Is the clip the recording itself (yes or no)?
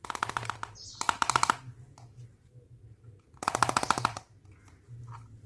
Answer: yes